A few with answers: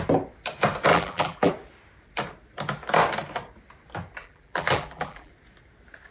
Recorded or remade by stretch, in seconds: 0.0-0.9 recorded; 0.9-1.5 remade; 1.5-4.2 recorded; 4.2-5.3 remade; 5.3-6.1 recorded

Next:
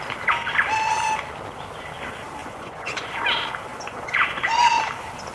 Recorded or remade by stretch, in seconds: 0.0-2.4 recorded; 2.4-3.2 remade; 3.2-3.7 recorded; 3.7-4.7 remade; 4.7-5.3 recorded

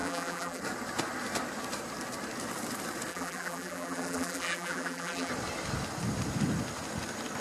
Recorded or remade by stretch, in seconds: 0.0-0.6 remade; 0.6-3.1 recorded; 3.1-5.3 remade; 5.3-7.4 recorded

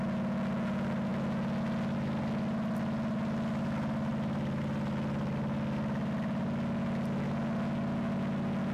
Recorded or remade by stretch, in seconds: 0.0-8.7 recorded

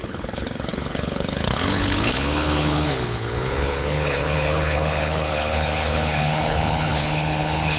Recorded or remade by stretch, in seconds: 0.0-7.8 remade